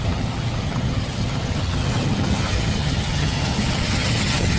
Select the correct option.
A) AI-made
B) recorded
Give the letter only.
A